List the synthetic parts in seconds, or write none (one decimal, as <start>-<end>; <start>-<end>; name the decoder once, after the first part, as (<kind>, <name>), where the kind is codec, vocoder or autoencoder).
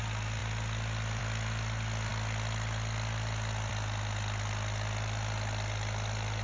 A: none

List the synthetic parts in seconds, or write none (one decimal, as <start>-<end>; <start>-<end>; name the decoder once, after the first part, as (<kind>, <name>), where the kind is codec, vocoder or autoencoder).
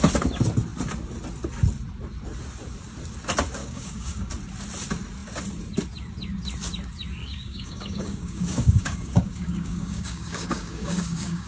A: 3.6-4.3 (codec, DAC); 7.2-11.5